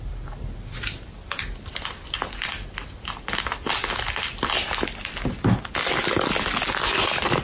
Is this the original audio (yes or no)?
yes